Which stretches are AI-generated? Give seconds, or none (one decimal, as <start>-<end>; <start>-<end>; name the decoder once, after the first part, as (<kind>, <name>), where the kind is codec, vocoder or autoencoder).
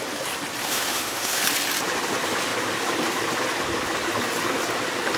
0.6-1.4 (autoencoder, DAC-VAE)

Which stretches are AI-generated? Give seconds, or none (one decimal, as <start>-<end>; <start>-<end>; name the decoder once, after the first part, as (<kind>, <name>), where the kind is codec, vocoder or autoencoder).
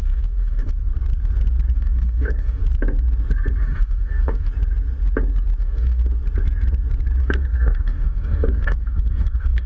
0.0-0.9 (codec, DAC); 1.7-2.6; 3.6-4.5; 5.6-6.0; 7.2-9.7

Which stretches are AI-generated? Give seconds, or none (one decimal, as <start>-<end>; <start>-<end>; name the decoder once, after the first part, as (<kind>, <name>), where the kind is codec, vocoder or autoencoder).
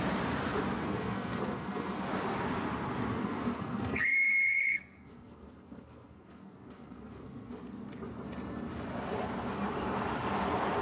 0.8-2.0 (codec, SNAC); 3.2-7.5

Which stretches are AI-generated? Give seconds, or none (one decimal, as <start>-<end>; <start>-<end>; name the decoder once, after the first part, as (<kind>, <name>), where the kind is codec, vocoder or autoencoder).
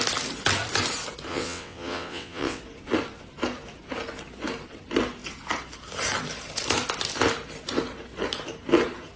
1.3-2.6 (vocoder, WaveNeXt)